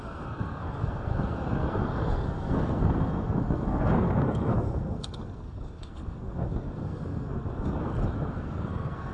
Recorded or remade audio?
remade